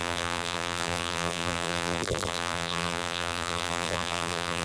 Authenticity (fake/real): fake